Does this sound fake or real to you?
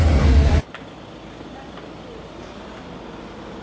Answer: real